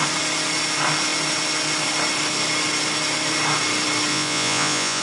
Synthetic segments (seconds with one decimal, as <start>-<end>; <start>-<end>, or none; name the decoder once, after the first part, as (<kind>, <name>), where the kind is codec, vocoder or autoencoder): 4.1-5.0 (vocoder, Vocos)